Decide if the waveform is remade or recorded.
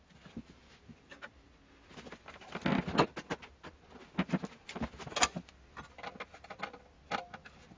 recorded